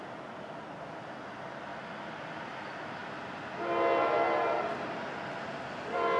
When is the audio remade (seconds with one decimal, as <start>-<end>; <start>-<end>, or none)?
none

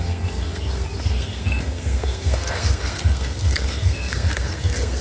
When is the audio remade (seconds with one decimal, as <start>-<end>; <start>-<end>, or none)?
0.0-5.0